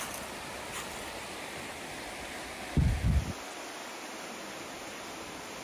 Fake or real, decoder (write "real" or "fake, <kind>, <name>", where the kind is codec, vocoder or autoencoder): real